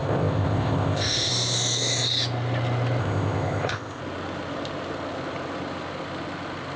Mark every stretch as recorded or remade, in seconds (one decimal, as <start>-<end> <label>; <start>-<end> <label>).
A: 0.0-1.3 remade; 1.3-3.0 recorded; 3.0-4.0 remade; 4.0-6.8 recorded